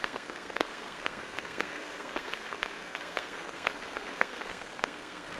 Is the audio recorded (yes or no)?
no